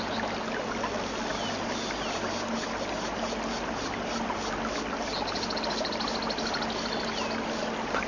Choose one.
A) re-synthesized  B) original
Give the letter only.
B